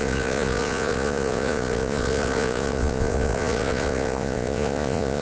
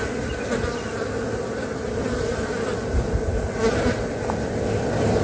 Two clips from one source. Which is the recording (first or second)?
second